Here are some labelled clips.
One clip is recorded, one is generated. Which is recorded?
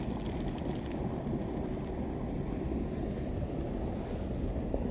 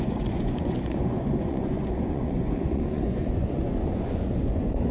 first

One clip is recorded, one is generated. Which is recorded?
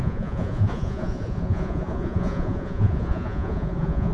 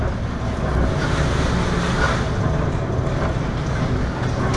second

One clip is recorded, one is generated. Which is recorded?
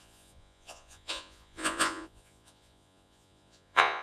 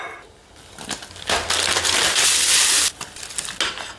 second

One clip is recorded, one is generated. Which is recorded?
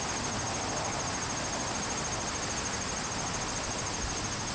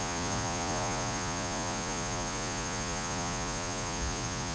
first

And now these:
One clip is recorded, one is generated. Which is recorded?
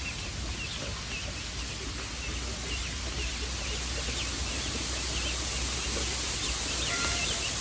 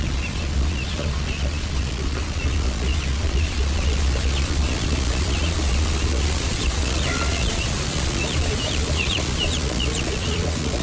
first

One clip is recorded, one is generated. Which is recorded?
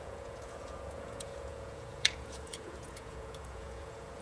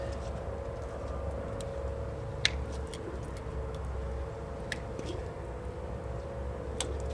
second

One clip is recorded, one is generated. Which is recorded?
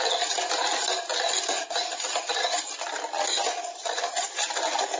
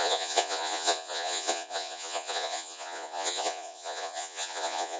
first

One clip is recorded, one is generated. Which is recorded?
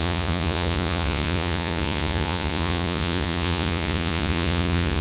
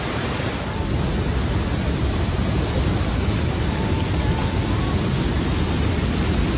second